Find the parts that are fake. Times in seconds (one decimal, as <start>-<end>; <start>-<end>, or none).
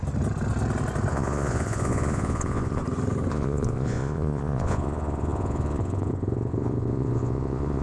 1.1-2.8; 3.3-7.8